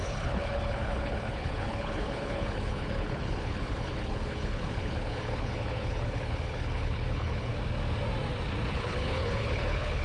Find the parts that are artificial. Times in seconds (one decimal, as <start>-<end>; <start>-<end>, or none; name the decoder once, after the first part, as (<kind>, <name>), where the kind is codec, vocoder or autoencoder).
0.0-7.5 (codec, HILCodec); 8.7-10.0